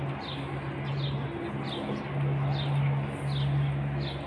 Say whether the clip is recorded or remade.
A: recorded